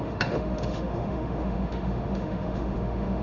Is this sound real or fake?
fake